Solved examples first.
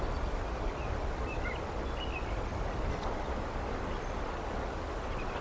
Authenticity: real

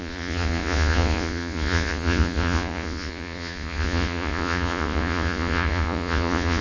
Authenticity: fake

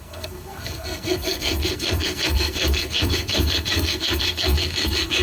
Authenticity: fake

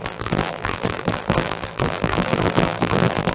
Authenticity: fake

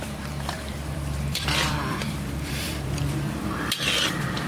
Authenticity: fake